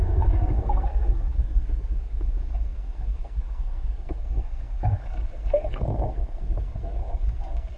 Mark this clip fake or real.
fake